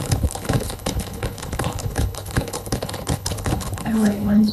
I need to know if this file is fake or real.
fake